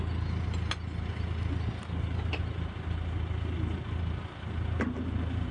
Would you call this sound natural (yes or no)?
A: yes